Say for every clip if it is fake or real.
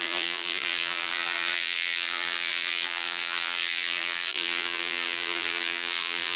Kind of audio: fake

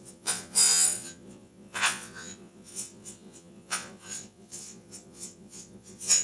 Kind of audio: fake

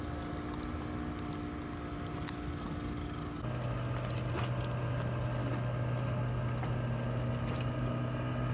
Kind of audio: real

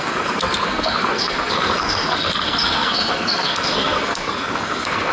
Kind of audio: fake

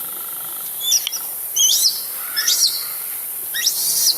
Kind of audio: real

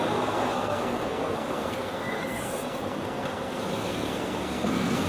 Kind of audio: fake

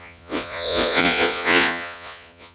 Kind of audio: fake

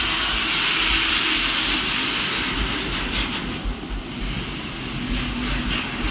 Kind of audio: real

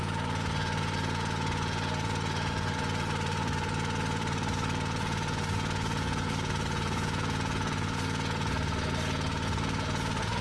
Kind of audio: fake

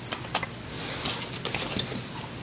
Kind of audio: real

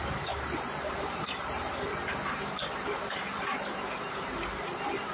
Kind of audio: fake